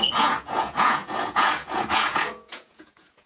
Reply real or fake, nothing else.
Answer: fake